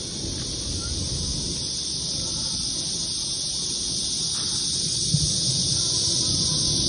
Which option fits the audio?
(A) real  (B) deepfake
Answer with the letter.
A